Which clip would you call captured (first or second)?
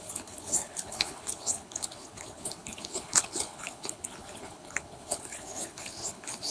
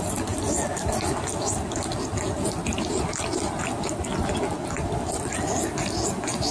second